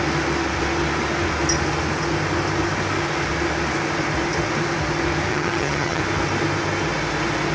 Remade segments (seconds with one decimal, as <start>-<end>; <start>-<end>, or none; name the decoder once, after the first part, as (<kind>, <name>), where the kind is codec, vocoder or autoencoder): 5.3-6.0 (vocoder, HiFi-GAN)